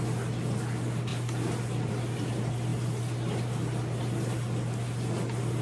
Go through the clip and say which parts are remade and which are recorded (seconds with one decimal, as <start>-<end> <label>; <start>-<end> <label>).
0.0-5.6 recorded